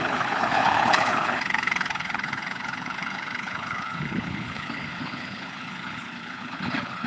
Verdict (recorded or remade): remade